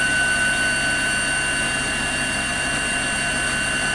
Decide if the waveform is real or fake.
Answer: real